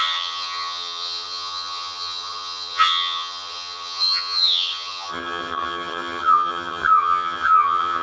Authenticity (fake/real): fake